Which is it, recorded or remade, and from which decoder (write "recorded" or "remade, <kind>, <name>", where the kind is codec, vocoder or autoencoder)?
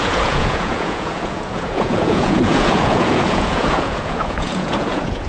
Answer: remade, vocoder, Vocos